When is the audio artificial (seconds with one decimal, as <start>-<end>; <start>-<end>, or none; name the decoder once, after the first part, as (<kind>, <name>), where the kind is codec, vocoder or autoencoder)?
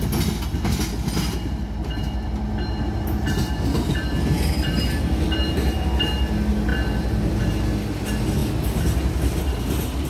none